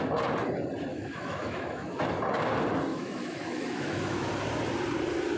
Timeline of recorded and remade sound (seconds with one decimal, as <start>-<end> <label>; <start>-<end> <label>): 0.0-0.9 recorded; 0.9-2.1 remade; 2.1-2.9 recorded; 2.9-4.3 remade; 4.3-5.4 recorded